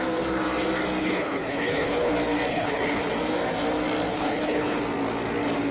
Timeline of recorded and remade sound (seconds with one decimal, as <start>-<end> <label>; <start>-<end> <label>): 0.0-1.0 recorded; 1.0-2.1 remade; 2.1-2.5 recorded; 2.5-3.1 remade; 3.1-4.1 recorded; 4.1-4.8 remade; 4.8-5.7 recorded